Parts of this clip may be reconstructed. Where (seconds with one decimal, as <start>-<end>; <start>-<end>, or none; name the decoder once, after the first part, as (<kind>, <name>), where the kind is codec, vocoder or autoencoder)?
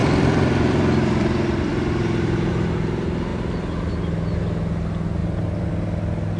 0.0-2.5 (vocoder, BigVGAN v2); 5.2-5.7